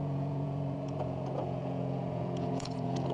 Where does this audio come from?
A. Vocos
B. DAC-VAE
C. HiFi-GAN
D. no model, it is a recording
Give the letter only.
A